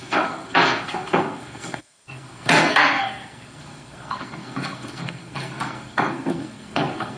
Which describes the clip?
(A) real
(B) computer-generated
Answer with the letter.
B